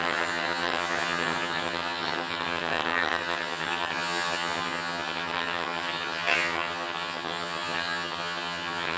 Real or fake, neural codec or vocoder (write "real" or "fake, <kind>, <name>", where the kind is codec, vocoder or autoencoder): fake, vocoder, HiFi-GAN